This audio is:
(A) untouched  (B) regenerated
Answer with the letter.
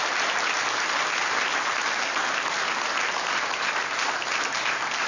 A